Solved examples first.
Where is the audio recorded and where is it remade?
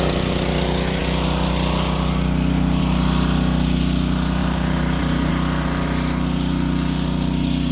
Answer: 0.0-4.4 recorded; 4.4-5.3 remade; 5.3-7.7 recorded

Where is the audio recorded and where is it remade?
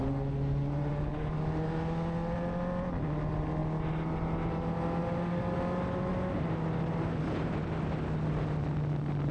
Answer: 0.0-9.3 recorded